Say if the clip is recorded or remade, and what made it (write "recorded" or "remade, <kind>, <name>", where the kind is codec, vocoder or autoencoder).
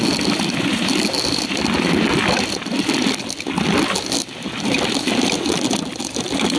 recorded